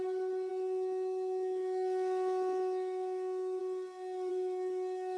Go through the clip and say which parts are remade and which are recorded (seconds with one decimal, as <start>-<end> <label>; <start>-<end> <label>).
0.0-0.5 recorded; 0.5-3.6 remade; 3.6-4.3 recorded; 4.3-5.2 remade